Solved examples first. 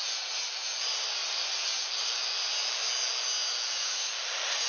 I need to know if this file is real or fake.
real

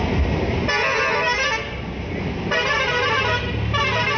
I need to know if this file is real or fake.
real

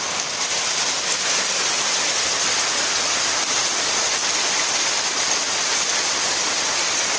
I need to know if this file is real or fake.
real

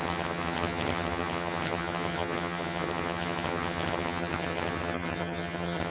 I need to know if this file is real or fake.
fake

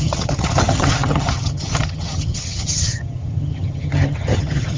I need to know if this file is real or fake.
fake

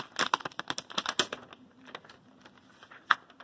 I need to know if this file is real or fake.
real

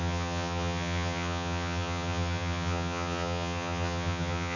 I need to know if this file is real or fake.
fake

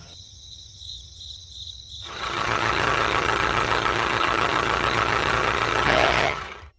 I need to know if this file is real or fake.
fake